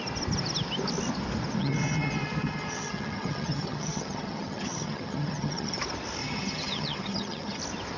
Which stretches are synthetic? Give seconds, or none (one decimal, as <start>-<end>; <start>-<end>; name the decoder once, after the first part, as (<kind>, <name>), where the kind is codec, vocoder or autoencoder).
1.6-5.8 (vocoder, HiFi-GAN); 6.2-7.6